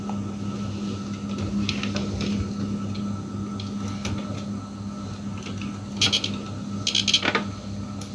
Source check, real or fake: real